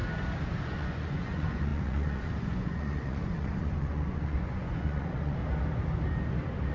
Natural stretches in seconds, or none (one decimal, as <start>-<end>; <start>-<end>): 0.0-0.6; 5.4-6.7